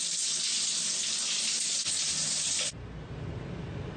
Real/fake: real